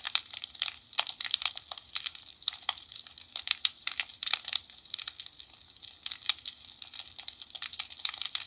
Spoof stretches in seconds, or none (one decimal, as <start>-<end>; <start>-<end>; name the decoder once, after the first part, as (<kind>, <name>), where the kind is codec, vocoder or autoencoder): 0.0-8.5 (vocoder, BigVGAN v2)